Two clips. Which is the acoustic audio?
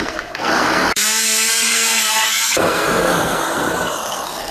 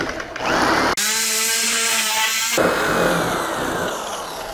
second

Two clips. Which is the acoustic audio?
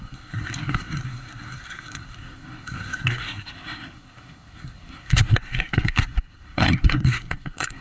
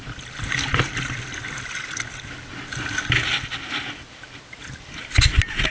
second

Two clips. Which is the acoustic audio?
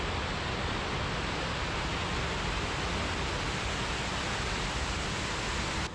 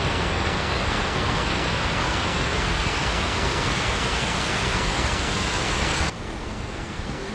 first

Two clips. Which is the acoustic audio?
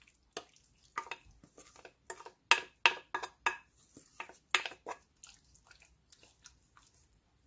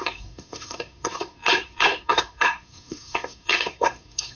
first